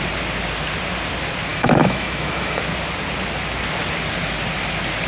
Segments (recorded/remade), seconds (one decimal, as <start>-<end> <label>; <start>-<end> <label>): 0.0-1.5 recorded; 1.5-2.6 remade; 2.6-5.1 recorded